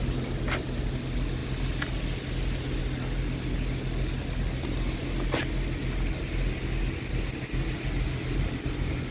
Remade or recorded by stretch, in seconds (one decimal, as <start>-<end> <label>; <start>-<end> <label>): 0.0-9.1 recorded